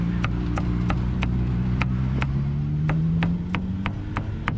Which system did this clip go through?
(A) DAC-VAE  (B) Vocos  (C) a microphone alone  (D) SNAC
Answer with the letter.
C